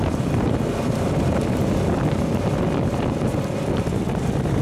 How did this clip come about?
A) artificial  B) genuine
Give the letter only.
B